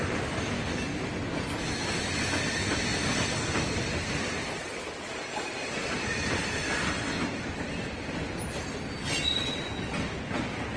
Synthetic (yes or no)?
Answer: no